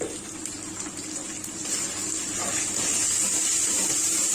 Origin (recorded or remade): recorded